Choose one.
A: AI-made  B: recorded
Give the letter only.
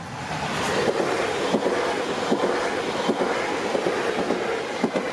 B